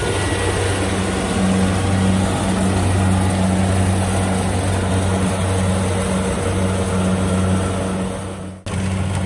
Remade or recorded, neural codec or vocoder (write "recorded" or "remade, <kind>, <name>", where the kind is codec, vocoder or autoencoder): recorded